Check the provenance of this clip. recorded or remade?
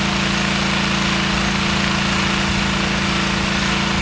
recorded